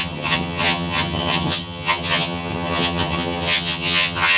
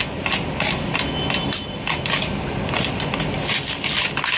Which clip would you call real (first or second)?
second